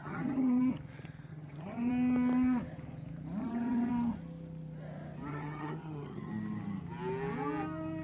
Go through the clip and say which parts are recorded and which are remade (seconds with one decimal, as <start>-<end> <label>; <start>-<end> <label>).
0.0-0.6 remade; 0.6-1.3 recorded; 1.3-1.9 remade; 1.9-3.4 recorded; 3.4-3.9 remade; 3.9-5.3 recorded; 5.3-6.3 remade; 6.3-8.0 recorded